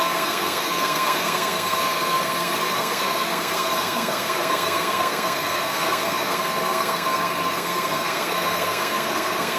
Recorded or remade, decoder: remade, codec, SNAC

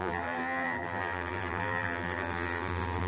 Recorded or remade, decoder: remade, vocoder, BigVGAN v2